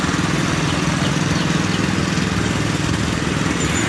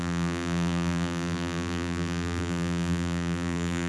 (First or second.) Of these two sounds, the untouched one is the first